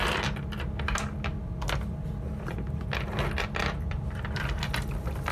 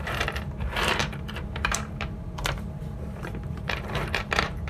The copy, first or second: second